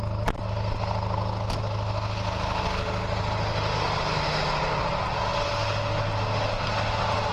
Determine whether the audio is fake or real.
real